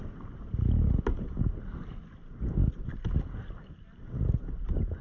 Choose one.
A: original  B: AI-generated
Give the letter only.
A